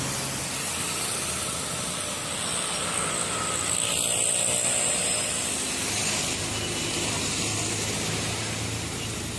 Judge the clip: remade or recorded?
recorded